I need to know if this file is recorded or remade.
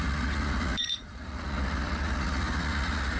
remade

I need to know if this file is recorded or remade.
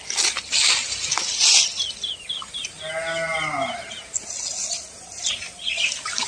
recorded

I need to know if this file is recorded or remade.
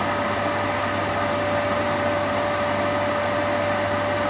recorded